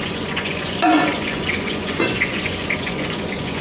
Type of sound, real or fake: fake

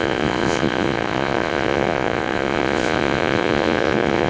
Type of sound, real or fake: fake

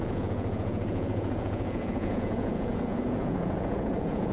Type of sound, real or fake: fake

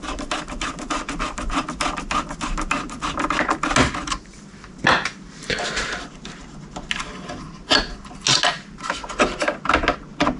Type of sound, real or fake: real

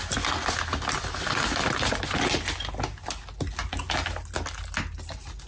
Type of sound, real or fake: real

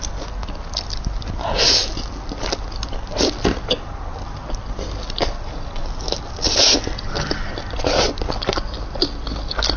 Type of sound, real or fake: real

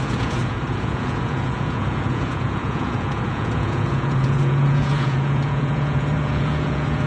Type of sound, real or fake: fake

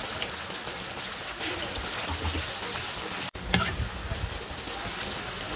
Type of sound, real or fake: real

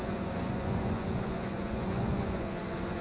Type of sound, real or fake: fake